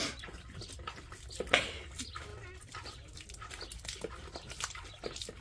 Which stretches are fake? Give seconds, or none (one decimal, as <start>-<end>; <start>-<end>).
none